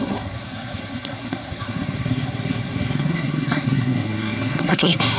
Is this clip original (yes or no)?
no